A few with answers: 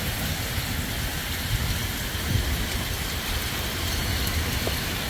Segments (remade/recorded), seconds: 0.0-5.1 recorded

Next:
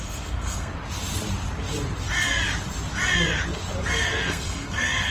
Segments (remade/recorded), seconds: 0.0-0.7 remade; 0.7-3.8 recorded; 3.8-5.1 remade

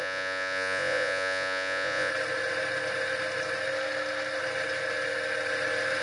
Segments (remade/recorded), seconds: 0.0-2.1 remade; 2.1-6.0 recorded

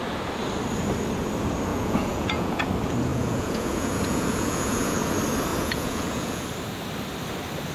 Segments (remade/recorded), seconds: 0.0-1.7 recorded; 1.7-2.7 remade; 2.7-3.1 recorded; 3.1-5.1 remade; 5.1-5.5 recorded; 5.5-6.4 remade; 6.4-7.7 recorded

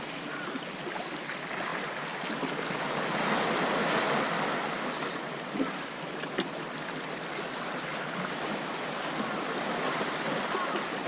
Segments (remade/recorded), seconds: 0.0-11.1 recorded

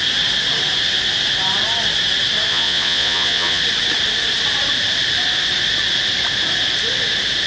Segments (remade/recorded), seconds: 0.0-2.5 recorded; 2.5-3.6 remade; 3.6-7.5 recorded

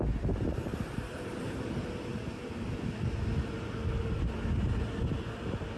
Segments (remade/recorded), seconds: 0.0-5.8 recorded

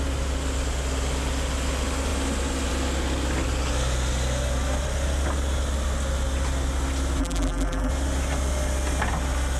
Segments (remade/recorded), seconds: 0.0-7.2 recorded; 7.2-7.9 remade; 7.9-9.6 recorded